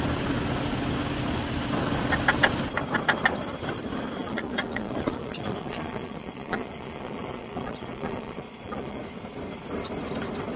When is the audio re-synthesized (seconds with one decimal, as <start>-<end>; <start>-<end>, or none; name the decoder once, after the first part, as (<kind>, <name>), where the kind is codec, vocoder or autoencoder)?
4.2-9.0 (vocoder, Vocos)